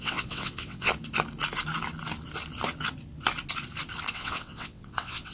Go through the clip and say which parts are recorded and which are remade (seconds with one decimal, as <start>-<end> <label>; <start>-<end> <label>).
0.0-0.9 remade; 0.9-4.1 recorded; 4.1-5.3 remade